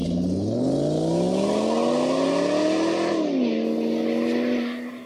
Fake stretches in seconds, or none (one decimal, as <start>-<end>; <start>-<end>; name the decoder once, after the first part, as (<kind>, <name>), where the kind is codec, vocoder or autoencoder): none

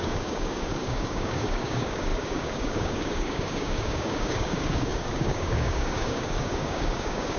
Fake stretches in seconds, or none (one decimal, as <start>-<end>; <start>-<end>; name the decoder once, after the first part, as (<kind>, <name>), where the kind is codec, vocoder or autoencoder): 0.0-7.4 (codec, DAC)

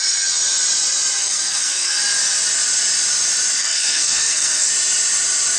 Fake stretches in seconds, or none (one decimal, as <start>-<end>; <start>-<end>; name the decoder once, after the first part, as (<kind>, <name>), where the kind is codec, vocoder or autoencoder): 1.2-1.9 (codec, SNAC); 3.6-4.7

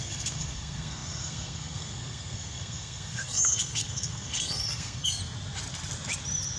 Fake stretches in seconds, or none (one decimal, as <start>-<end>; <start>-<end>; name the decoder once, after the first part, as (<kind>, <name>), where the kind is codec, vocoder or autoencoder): 0.0-5.2 (codec, SNAC)

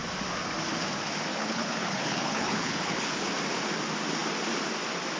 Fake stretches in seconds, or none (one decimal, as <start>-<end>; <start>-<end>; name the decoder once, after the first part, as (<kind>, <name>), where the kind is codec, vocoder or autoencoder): 1.3-3.3 (codec, HILCodec)

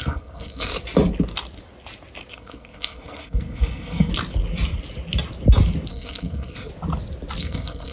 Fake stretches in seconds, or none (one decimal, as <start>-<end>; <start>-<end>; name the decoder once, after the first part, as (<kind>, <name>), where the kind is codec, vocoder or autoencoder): 0.0-0.7 (codec, SNAC); 2.3-4.1; 5.9-6.7; 7.4-7.9

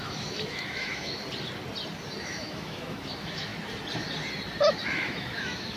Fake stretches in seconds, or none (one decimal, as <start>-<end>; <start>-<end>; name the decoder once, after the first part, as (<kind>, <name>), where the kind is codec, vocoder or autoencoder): 0.0-1.2 (autoencoder, DAC-VAE); 2.2-3.5; 4.8-5.8

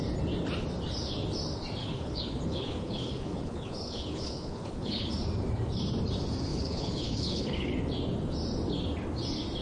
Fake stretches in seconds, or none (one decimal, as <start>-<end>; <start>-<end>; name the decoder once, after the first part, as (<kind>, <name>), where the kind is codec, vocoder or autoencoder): 1.8-5.1 (codec, HILCodec); 6.5-7.7